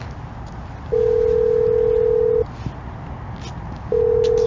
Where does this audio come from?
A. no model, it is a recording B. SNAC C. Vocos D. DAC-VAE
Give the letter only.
A